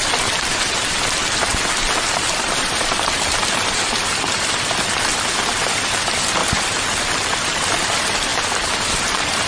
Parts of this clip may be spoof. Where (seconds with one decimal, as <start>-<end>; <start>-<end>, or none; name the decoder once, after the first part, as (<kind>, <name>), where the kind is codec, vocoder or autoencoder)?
1.8-4.7 (vocoder, BigVGAN v2); 6.4-7.7; 8.3-9.5